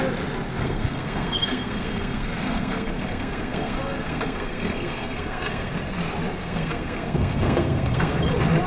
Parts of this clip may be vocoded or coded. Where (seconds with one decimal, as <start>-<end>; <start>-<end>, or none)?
0.6-5.7; 6.4-8.2